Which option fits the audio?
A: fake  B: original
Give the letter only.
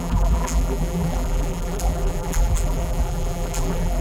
A